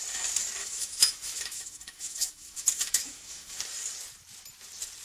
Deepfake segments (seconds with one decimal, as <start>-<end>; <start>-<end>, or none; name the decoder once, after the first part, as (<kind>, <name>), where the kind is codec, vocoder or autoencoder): 0.6-3.6 (autoencoder, DAC-VAE)